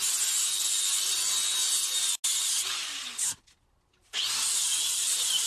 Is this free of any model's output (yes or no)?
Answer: yes